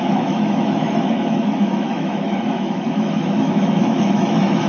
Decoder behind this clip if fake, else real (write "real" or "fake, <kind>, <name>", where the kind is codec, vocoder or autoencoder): fake, autoencoder, DAC-VAE